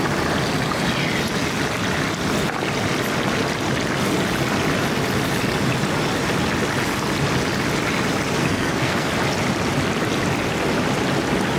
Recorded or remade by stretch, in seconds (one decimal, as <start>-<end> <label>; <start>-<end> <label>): 0.0-8.4 recorded; 8.4-9.1 remade; 9.1-11.6 recorded